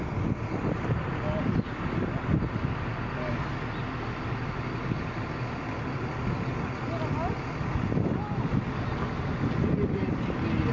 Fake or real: real